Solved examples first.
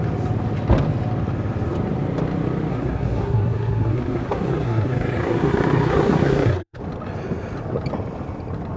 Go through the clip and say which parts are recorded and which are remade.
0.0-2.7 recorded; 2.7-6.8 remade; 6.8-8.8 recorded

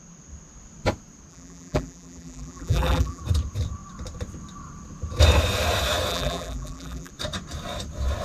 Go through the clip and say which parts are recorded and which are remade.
0.0-1.3 recorded; 1.3-3.2 remade; 3.2-6.1 recorded; 6.1-7.1 remade; 7.1-8.2 recorded

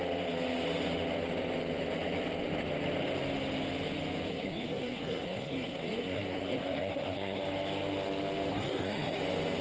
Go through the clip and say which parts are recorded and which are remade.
0.0-4.3 recorded; 4.3-7.4 remade; 7.4-8.5 recorded; 8.5-9.2 remade; 9.2-9.6 recorded

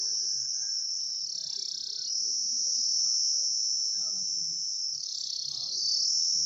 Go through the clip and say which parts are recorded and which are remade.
0.0-0.4 recorded; 0.4-1.0 remade; 1.0-4.8 recorded; 4.8-6.0 remade; 6.0-6.5 recorded

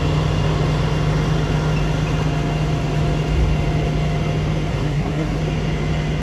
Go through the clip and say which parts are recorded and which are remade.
0.0-4.7 recorded; 4.7-5.4 remade; 5.4-6.2 recorded

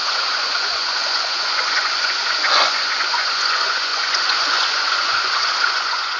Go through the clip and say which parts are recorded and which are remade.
0.0-6.2 remade

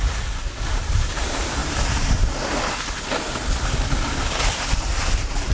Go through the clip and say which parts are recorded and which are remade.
0.0-5.5 recorded